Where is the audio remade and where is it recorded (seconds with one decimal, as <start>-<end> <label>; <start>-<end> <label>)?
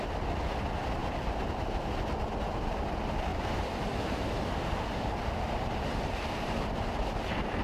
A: 0.0-1.0 recorded; 1.0-1.8 remade; 1.8-3.3 recorded; 3.3-6.9 remade; 6.9-7.6 recorded